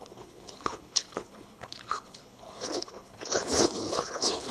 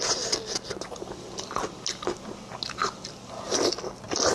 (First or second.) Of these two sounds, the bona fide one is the second